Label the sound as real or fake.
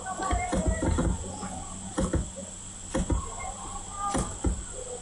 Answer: fake